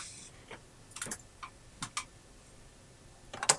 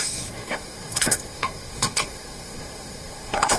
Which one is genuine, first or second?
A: first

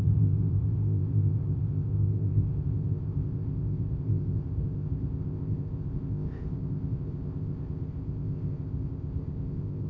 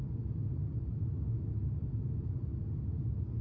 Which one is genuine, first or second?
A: second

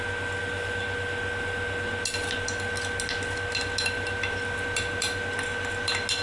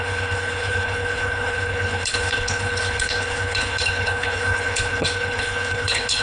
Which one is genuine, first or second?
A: first